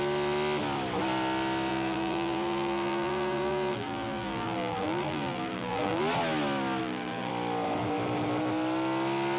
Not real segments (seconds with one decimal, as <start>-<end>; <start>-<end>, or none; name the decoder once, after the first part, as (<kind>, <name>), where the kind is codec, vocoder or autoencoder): 1.7-6.0 (vocoder, BigVGAN v2); 6.8-7.3